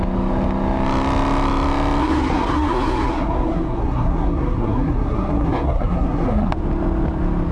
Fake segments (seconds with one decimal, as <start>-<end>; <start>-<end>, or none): 2.0-6.5